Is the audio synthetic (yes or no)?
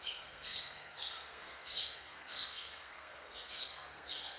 yes